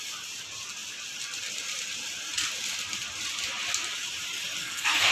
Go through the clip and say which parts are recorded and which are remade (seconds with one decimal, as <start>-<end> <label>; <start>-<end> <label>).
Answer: 0.0-4.6 recorded; 4.6-5.1 remade

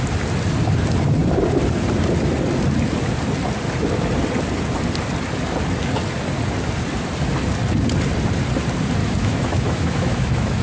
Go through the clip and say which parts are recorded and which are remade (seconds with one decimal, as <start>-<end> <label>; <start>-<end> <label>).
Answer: 0.0-9.0 recorded; 9.0-10.6 remade

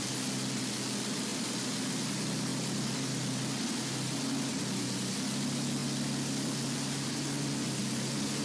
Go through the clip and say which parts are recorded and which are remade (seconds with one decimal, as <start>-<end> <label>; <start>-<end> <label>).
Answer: 0.0-8.4 recorded

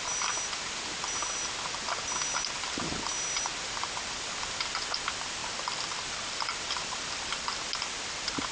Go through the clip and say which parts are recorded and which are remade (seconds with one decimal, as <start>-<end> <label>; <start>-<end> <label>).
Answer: 0.0-5.4 recorded; 5.4-7.6 remade; 7.6-8.5 recorded

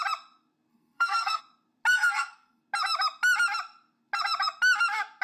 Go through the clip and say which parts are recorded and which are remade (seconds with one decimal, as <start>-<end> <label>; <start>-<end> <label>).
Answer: 0.0-0.7 recorded; 0.7-1.4 remade; 1.4-1.9 recorded; 1.9-2.6 remade; 2.6-5.2 recorded